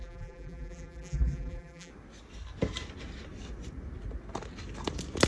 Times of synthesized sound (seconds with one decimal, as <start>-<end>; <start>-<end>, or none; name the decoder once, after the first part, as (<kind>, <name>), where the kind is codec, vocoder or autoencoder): 0.0-1.9 (vocoder, BigVGAN v2)